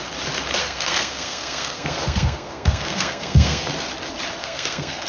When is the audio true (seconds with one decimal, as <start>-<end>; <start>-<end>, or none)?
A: 0.0-0.6; 3.7-4.4